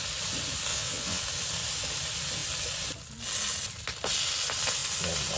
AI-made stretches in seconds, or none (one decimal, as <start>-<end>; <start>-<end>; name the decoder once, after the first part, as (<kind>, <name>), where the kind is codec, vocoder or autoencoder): 0.7-1.2 (vocoder, WaveNeXt)